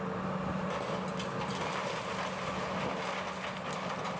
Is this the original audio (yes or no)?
yes